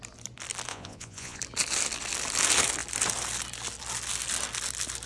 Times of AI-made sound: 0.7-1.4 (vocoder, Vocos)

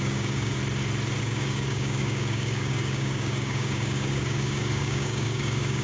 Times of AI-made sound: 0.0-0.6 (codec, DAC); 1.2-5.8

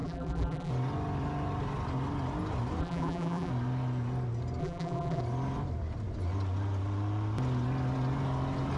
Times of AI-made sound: 0.0-0.7 (vocoder, BigVGAN v2); 2.8-3.5; 4.6-5.2

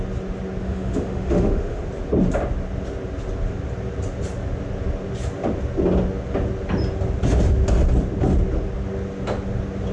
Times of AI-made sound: 0.6-1.8 (autoencoder, DAC-VAE)

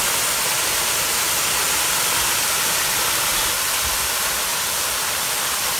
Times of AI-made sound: 4.5-5.8 (vocoder, BigVGAN v2)

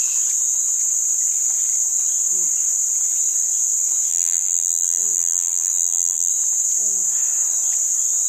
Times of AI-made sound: 4.1-6.3 (vocoder, BigVGAN v2)

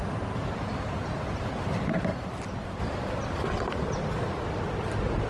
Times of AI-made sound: none

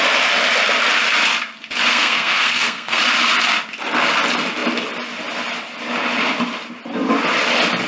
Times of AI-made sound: 1.9-3.0 (codec, SNAC)